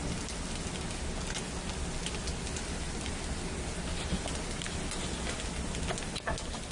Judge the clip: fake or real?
real